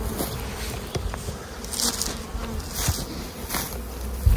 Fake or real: real